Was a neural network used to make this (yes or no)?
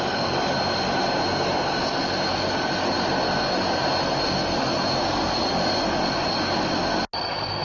no